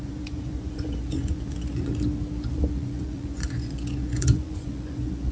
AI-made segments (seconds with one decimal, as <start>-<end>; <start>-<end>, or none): 0.0-1.9; 2.5-5.3